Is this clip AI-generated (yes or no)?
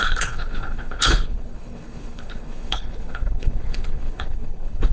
yes